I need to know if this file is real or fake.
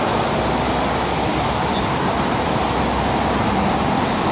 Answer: real